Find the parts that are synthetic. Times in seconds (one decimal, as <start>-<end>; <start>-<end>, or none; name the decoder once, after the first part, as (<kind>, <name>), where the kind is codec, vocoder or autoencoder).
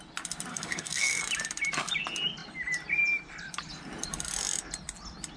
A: 0.5-1.2 (codec, SNAC)